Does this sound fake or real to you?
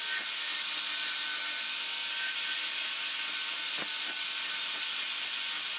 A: real